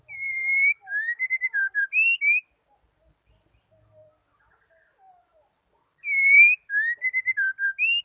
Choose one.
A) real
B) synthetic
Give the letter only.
A